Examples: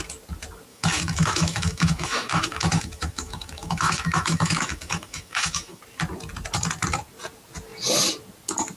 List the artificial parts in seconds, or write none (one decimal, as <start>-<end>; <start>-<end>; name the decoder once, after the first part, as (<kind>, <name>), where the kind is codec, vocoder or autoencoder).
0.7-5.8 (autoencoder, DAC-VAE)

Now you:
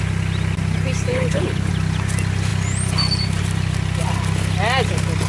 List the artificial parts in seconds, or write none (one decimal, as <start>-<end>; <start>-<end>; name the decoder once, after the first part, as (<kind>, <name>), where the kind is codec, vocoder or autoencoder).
1.1-1.7 (codec, HILCodec)

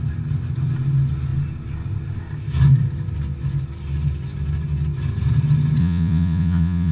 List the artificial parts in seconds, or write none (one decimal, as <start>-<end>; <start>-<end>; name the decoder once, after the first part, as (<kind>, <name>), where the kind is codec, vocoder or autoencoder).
5.8-6.9 (vocoder, Vocos)